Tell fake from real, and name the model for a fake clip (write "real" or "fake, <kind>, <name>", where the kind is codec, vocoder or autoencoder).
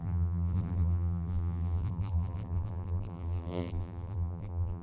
fake, vocoder, BigVGAN v2